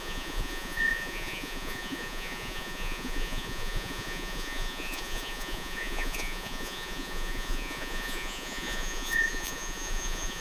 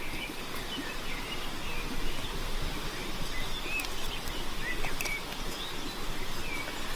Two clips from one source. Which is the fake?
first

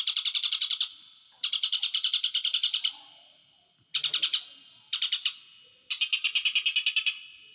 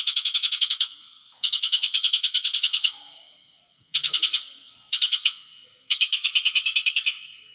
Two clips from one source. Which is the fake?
second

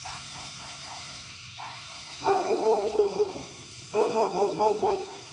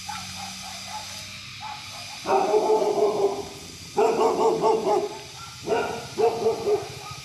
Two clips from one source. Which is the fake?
first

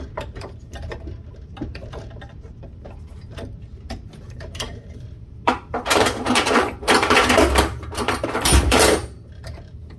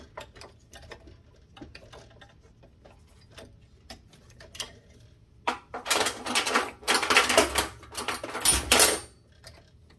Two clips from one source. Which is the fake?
first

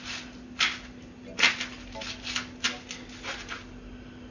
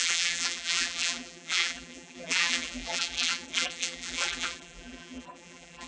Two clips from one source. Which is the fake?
second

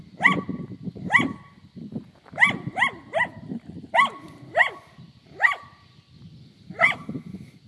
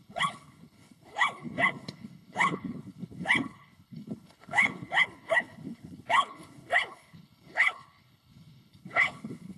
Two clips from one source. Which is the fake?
second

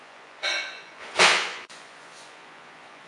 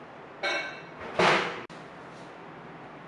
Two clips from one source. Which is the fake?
first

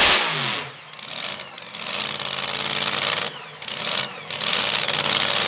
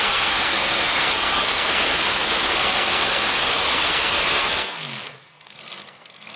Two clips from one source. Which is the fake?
second